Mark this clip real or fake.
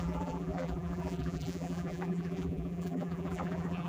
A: fake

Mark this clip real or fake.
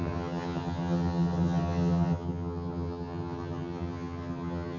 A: fake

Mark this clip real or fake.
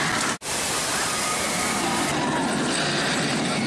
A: real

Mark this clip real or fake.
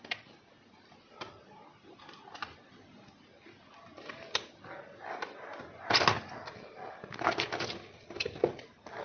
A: real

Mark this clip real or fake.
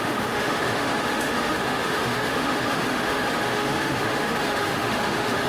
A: fake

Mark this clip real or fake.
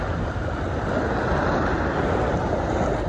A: real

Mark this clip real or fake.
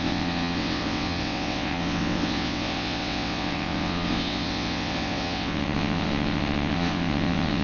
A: fake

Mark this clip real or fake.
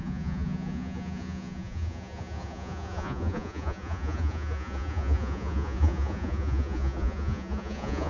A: fake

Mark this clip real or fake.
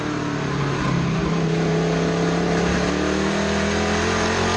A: real